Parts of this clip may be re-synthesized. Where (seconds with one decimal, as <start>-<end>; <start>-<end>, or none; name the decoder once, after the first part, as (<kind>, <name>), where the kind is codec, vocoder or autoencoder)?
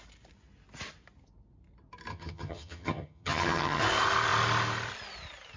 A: 2.1-3.8 (vocoder, HiFi-GAN)